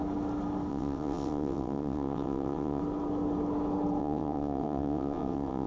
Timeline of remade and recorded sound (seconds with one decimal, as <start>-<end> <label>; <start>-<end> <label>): 0.0-0.7 recorded; 0.7-2.8 remade; 2.8-4.0 recorded; 4.0-5.7 remade